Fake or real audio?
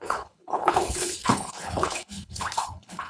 fake